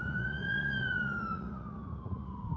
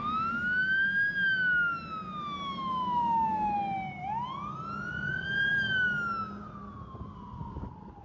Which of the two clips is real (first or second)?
second